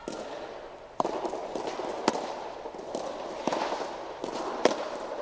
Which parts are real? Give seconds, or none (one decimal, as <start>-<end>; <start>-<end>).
0.0-5.2